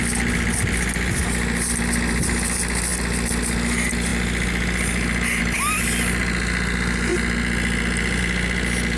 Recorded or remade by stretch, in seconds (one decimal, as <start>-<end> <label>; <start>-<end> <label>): 0.0-9.0 recorded